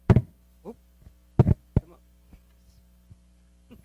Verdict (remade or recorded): recorded